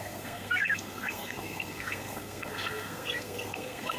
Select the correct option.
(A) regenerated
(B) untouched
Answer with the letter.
A